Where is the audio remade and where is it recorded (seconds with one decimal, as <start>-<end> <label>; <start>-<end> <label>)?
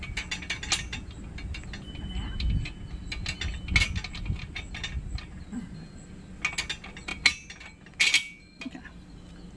0.0-9.6 recorded